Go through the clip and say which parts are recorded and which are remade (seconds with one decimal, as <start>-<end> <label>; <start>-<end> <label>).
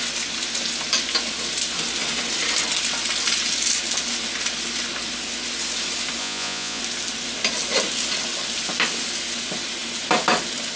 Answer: 0.0-6.2 recorded; 6.2-6.8 remade; 6.8-10.8 recorded